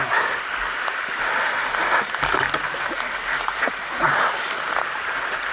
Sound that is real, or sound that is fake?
real